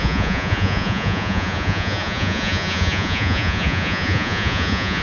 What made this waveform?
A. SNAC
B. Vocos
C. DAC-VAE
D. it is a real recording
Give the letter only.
B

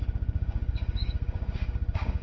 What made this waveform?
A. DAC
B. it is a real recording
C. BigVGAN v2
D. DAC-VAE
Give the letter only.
A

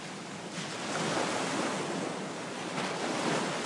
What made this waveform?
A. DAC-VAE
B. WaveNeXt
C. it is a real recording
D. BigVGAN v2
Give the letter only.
C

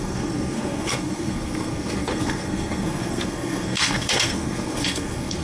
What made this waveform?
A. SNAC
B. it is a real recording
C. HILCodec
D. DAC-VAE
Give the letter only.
A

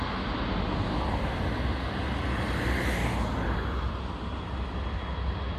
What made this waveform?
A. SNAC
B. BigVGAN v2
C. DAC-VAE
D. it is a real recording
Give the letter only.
D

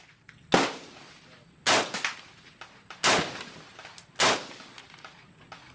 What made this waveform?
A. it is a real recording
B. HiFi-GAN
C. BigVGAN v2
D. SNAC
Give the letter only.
A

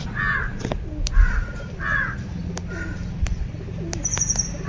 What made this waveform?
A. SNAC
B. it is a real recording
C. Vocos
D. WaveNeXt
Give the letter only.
B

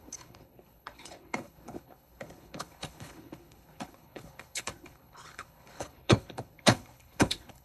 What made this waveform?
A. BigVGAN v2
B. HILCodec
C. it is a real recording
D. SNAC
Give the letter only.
B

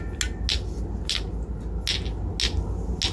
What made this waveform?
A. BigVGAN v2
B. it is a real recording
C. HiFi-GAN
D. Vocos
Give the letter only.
B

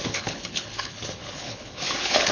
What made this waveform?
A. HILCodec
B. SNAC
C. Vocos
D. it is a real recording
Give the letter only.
A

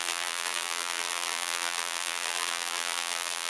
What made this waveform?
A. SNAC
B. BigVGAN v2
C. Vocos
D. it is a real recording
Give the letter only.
B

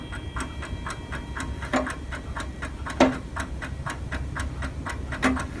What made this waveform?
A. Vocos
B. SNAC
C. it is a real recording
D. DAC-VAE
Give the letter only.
C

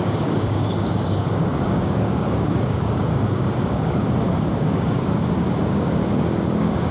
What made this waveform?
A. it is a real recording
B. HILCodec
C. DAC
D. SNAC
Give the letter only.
C